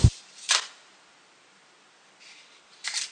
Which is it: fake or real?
real